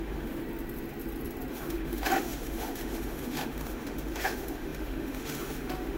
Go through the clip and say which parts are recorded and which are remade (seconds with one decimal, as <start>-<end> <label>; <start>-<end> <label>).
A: 0.0-0.4 remade; 0.4-1.5 recorded; 1.5-6.0 remade